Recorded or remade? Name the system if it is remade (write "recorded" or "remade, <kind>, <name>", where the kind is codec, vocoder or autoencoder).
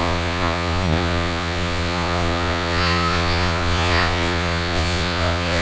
remade, vocoder, Vocos